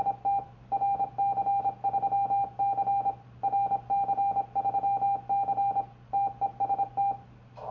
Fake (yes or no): no